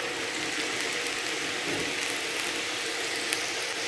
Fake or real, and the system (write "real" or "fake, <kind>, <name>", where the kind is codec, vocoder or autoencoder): real